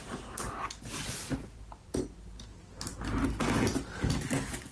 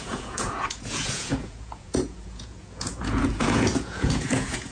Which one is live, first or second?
first